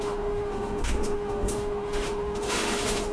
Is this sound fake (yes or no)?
yes